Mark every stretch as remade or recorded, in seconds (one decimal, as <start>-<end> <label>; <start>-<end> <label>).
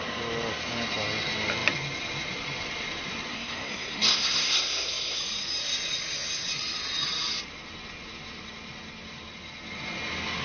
0.0-3.3 recorded; 3.3-5.2 remade; 5.2-10.4 recorded